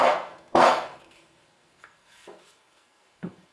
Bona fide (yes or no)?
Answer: no